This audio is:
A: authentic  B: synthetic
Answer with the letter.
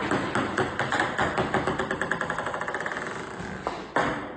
A